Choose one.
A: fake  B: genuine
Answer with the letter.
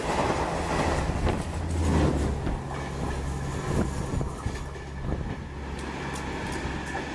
B